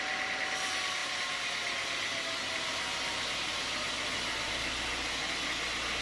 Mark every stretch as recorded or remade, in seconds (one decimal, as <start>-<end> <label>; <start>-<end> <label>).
0.0-6.0 recorded